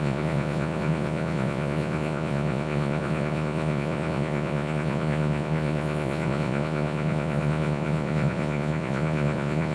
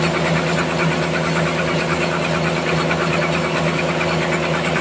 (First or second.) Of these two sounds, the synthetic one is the first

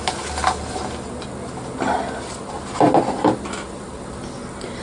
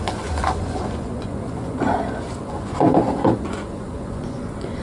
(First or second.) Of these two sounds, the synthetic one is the second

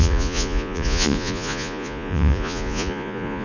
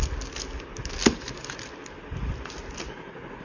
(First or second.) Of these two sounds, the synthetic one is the first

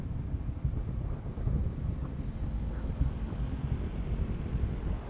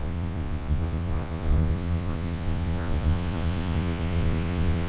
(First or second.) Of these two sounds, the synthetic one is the second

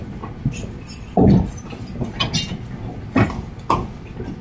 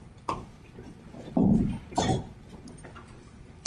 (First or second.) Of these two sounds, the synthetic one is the second